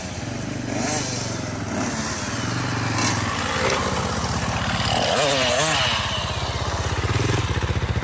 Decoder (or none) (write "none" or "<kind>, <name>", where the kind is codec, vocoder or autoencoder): none